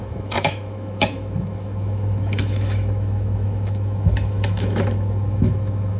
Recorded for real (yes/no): no